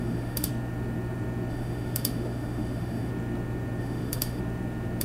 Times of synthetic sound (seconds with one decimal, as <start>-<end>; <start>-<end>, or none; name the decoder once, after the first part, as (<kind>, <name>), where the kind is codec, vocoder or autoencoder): 0.0-0.5 (autoencoder, DAC-VAE); 1.5-3.1; 3.8-4.4